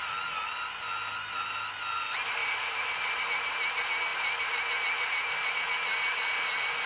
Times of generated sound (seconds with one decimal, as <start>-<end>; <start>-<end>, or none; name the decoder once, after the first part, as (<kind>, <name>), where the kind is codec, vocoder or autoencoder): 2.4-3.2 (vocoder, BigVGAN v2)